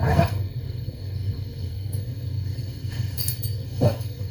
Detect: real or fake fake